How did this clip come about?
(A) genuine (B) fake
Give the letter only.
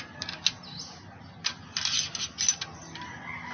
A